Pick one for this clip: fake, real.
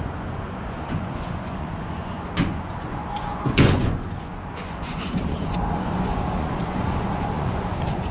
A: fake